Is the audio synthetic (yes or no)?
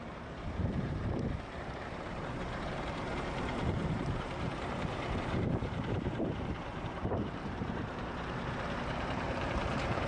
yes